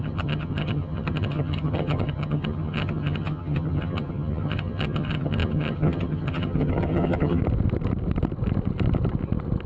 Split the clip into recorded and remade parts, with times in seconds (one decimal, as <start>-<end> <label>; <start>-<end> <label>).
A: 0.0-7.4 remade; 7.4-9.7 recorded